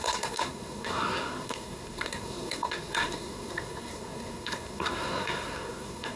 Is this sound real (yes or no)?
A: no